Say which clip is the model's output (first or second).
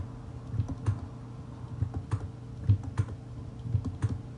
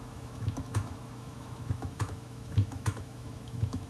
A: second